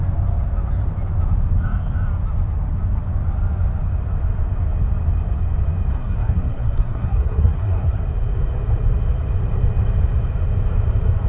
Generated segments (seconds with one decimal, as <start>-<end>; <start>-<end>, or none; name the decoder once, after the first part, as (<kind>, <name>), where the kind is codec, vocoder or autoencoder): 5.9-8.0 (codec, SNAC)